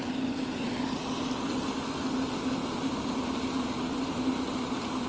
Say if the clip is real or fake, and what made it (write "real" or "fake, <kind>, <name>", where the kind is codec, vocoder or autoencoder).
real